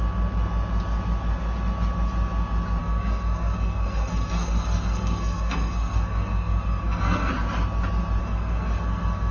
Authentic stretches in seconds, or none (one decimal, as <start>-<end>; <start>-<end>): 0.0-2.8; 7.3-8.2